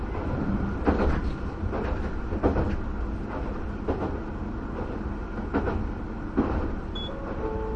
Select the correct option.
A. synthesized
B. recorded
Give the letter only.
B